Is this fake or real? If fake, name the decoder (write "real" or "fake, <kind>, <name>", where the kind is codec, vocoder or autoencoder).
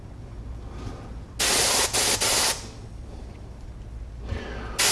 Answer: real